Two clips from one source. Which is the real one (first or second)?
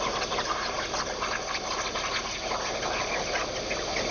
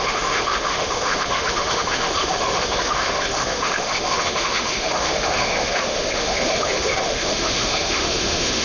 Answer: first